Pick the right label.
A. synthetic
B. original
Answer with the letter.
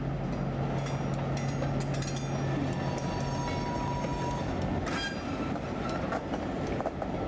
B